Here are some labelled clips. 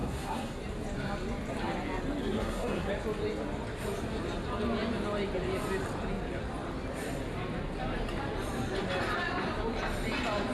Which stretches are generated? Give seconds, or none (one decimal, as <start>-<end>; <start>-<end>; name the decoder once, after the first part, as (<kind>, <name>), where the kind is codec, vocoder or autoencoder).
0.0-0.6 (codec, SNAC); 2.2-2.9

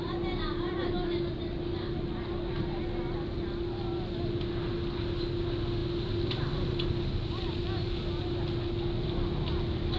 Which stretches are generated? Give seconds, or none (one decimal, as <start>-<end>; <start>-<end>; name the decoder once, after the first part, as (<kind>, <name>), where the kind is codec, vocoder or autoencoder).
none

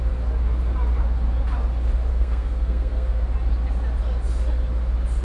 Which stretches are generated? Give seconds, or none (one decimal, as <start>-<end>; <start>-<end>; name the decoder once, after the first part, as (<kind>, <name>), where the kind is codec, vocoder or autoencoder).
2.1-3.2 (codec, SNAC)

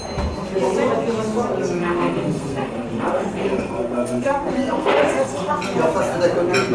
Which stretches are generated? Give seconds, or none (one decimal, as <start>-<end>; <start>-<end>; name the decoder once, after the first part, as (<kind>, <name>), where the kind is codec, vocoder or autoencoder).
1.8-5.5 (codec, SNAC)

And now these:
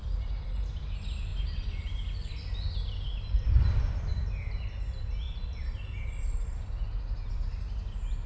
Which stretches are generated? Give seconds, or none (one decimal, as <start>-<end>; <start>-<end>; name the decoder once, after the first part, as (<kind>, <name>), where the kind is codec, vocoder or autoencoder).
none

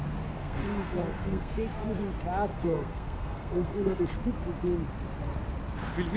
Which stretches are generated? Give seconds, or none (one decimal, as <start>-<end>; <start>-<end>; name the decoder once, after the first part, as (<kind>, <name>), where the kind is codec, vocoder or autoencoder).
0.4-1.5 (codec, SNAC); 2.5-4.0